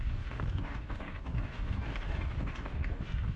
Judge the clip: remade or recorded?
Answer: remade